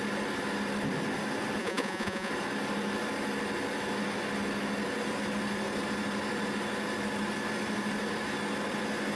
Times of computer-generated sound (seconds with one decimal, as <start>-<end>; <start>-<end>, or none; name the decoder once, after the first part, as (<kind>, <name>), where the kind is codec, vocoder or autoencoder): 1.6-2.3 (vocoder, Vocos)